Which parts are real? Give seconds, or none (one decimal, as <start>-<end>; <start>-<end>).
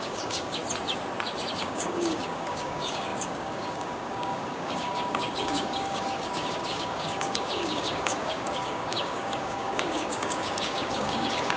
0.6-1.6